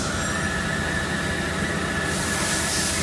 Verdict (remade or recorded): recorded